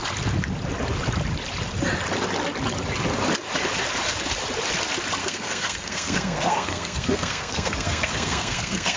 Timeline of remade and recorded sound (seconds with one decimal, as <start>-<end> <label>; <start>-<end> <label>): 0.0-5.2 recorded; 5.2-9.0 remade